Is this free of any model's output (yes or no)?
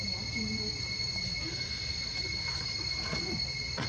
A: yes